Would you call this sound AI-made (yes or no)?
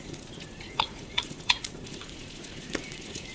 yes